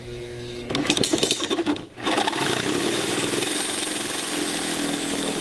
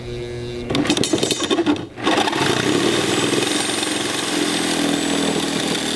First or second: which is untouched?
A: second